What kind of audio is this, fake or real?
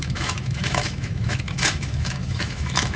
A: fake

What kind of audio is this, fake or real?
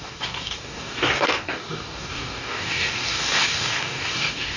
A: fake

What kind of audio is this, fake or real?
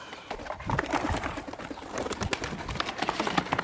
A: real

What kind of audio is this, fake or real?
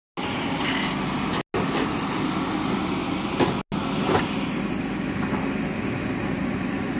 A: real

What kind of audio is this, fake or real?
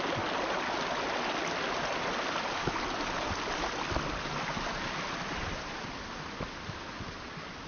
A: real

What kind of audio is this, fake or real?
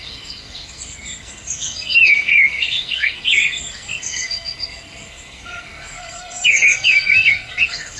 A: fake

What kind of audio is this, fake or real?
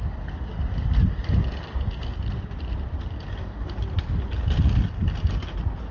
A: real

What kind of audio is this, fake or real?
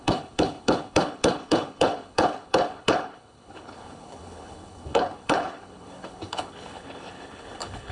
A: fake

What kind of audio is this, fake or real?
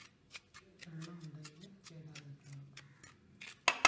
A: real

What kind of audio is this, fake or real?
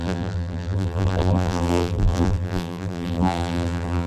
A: fake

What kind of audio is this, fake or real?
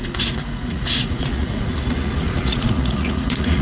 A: fake